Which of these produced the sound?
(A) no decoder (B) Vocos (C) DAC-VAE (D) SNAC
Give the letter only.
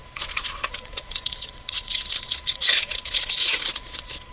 B